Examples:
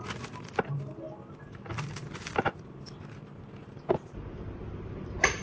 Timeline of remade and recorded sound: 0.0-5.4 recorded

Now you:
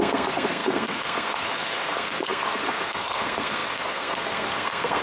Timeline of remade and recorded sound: 0.0-5.0 remade

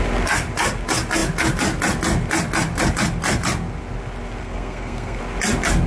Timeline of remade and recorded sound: 0.0-4.4 recorded; 4.4-5.2 remade; 5.2-5.9 recorded

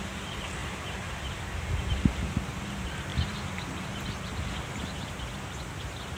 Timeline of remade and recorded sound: 0.0-6.2 recorded

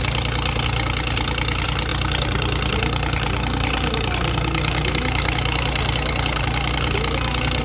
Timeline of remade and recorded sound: 0.0-1.9 recorded; 1.9-6.4 remade; 6.4-7.6 recorded